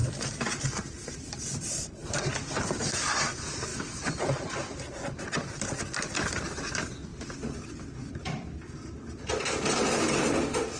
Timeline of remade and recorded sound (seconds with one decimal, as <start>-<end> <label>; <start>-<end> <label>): 0.0-10.8 recorded